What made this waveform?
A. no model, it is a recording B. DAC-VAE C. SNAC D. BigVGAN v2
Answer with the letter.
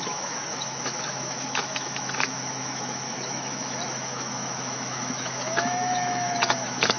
B